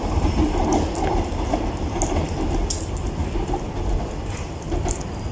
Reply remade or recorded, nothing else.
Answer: recorded